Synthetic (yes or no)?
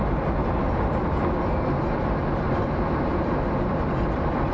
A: no